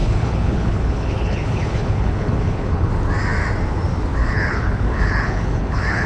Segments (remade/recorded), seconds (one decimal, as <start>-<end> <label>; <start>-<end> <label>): 0.0-2.9 remade; 2.9-4.2 recorded; 4.2-6.1 remade